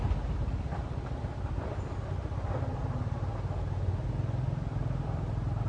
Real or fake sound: real